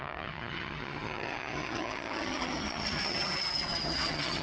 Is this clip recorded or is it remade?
remade